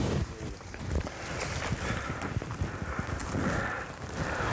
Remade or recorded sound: recorded